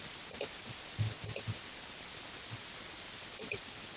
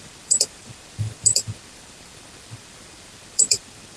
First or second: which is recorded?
first